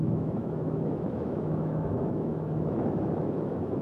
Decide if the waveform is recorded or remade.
remade